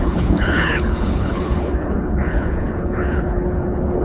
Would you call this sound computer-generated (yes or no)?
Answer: yes